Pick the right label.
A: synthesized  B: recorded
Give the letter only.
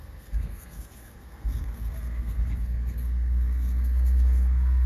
A